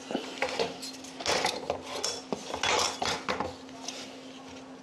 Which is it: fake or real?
real